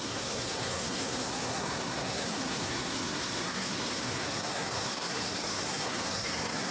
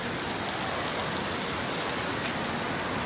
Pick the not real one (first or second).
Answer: first